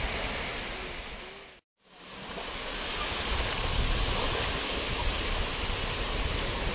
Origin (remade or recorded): recorded